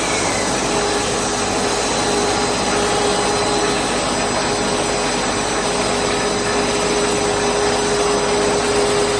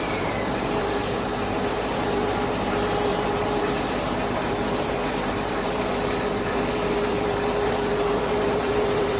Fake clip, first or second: second